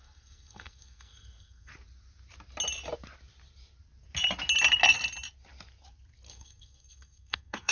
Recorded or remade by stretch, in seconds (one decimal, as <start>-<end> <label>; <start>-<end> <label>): 0.0-1.7 remade; 1.7-6.3 recorded; 6.3-7.7 remade